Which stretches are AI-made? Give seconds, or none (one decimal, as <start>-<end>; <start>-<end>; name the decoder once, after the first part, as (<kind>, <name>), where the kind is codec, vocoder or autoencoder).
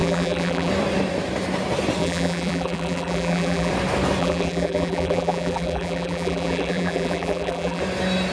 0.0-0.7 (vocoder, BigVGAN v2); 2.0-3.7; 4.2-7.8